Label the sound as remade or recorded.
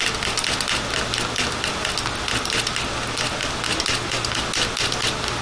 recorded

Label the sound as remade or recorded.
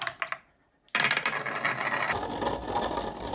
recorded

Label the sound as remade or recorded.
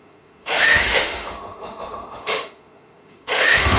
remade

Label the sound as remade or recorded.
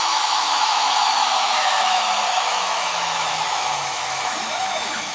remade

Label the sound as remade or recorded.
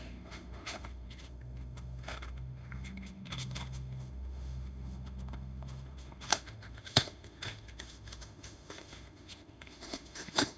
remade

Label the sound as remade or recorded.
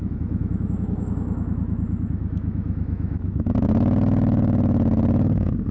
remade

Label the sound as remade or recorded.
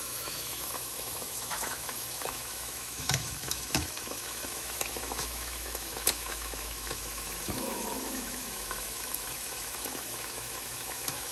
remade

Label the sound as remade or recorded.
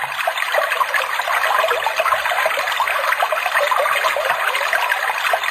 recorded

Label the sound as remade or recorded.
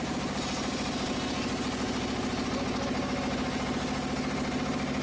recorded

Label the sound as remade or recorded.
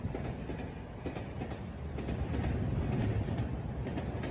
recorded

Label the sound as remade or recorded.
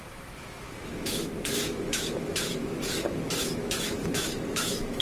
remade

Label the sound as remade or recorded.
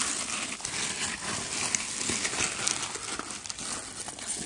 recorded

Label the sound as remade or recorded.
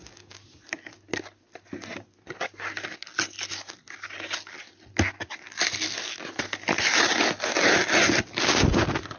recorded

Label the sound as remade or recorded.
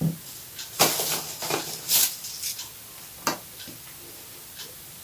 recorded